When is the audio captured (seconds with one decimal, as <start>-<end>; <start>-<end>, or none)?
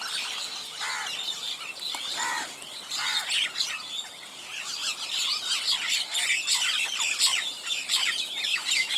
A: 0.0-4.8